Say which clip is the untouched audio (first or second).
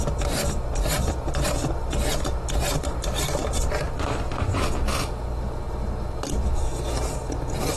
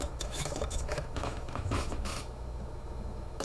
first